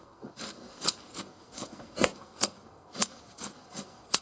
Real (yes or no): no